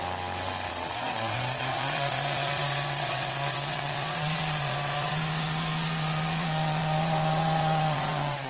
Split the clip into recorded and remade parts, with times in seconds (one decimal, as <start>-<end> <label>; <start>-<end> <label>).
0.0-0.7 recorded; 0.7-8.5 remade